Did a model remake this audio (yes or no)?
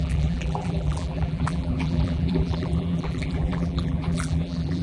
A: yes